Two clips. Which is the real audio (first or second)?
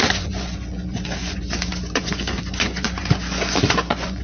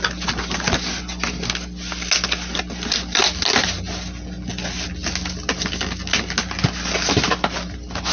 second